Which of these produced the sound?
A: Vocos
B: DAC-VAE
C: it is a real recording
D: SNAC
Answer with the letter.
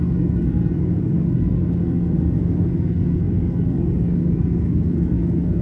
D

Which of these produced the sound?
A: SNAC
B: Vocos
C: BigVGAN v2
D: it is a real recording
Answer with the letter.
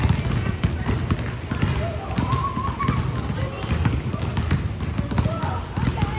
D